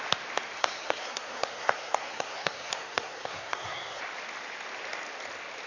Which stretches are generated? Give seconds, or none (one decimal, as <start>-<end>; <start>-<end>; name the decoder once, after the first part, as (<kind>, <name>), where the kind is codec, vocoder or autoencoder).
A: 0.6-4.0 (codec, SNAC)